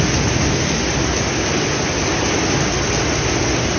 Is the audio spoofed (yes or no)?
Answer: no